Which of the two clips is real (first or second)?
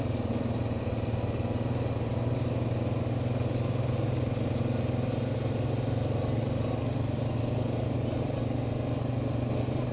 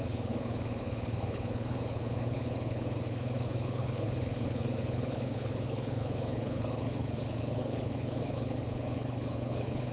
first